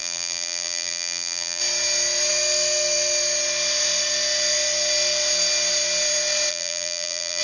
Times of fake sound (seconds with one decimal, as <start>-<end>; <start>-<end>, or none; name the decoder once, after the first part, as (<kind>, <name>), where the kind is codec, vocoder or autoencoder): 0.0-1.6 (vocoder, BigVGAN v2); 6.5-7.4